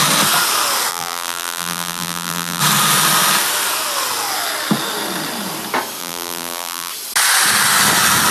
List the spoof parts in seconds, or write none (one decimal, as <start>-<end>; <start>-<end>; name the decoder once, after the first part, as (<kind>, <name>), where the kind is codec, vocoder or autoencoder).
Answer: 0.9-2.6 (vocoder, BigVGAN v2); 6.0-6.9